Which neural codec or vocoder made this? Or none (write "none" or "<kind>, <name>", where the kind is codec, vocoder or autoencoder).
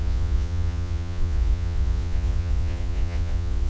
vocoder, Vocos